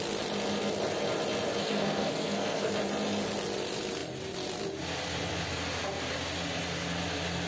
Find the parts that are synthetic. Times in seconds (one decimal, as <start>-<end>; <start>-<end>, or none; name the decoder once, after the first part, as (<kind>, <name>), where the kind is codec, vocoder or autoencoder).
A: 1.6-2.7 (codec, SNAC)